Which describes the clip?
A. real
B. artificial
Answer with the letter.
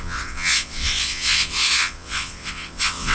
B